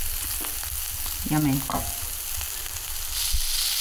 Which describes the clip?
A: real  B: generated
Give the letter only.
A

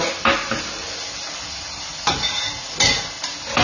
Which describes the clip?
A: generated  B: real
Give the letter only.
B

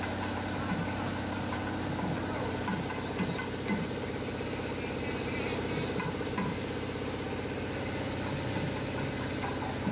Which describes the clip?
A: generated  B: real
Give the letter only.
B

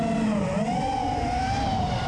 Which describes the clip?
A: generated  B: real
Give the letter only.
A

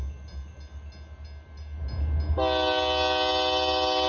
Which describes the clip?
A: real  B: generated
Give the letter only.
A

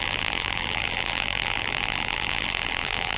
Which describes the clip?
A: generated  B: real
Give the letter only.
A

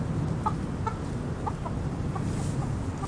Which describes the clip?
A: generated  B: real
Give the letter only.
B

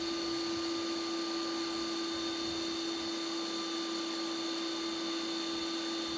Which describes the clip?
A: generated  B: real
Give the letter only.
B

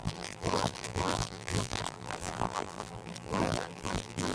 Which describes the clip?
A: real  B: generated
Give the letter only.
B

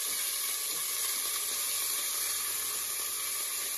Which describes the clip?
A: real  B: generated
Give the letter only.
A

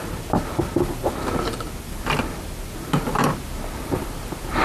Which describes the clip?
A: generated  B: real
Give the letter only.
A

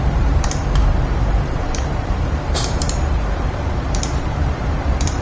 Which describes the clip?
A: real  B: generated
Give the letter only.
B